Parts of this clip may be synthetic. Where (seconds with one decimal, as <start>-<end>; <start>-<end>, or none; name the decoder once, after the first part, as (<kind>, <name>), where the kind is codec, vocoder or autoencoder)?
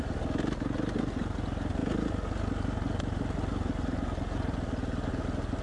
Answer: none